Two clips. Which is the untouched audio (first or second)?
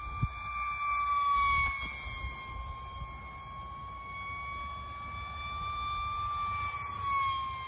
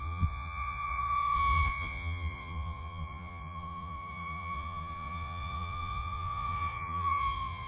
first